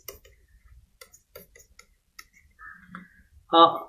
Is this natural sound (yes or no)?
yes